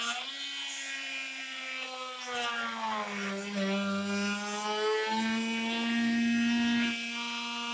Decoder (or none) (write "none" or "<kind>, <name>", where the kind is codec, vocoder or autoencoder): none